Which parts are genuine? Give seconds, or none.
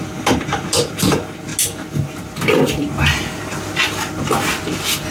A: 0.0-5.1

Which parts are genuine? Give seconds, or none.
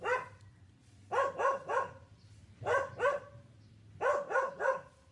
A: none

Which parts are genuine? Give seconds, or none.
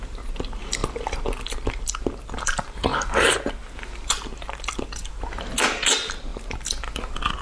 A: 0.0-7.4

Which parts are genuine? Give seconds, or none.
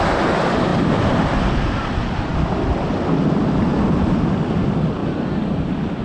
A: 0.0-6.0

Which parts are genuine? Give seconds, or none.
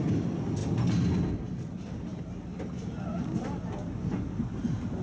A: 0.0-5.0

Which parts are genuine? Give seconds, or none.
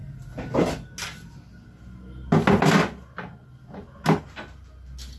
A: 0.0-5.2